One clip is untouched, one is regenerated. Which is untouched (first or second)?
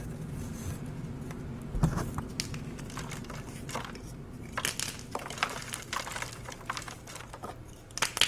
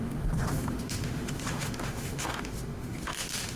first